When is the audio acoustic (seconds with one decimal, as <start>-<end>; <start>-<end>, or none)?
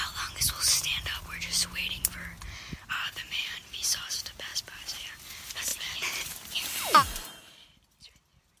0.0-4.5; 5.3-8.6